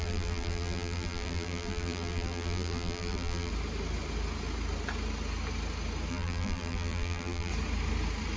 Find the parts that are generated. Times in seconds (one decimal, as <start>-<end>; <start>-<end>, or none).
0.0-3.5; 6.1-7.5